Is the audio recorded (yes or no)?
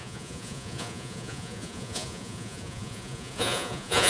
no